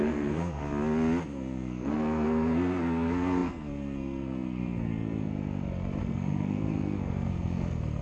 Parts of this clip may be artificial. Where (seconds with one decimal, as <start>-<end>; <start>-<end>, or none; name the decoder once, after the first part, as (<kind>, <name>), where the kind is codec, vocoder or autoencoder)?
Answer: 0.0-0.6 (codec, SNAC); 1.2-5.3; 6.0-8.0